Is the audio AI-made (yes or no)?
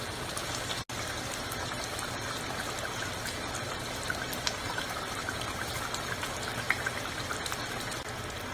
no